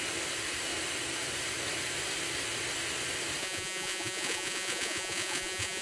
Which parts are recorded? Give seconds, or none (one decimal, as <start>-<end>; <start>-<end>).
0.0-3.4